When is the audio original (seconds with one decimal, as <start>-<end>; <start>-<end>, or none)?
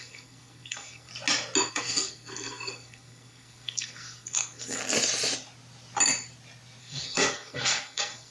1.1-1.7; 4.8-6.8